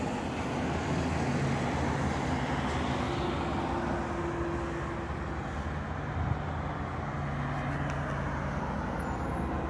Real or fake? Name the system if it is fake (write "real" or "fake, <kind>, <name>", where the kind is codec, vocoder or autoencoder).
real